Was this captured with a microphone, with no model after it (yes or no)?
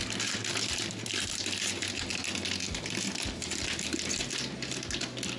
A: yes